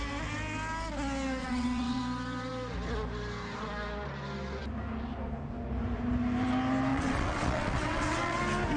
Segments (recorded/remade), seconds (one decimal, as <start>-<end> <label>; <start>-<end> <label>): 0.0-1.4 recorded; 1.4-2.0 remade; 2.0-6.9 recorded; 6.9-8.4 remade; 8.4-8.8 recorded